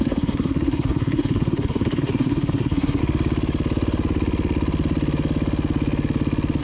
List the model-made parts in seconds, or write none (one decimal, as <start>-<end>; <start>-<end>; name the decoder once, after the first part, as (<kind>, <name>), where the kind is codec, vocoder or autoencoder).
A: 0.0-3.0 (codec, SNAC)